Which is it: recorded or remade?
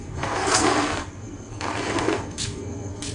remade